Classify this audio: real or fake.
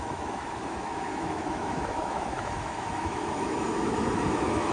fake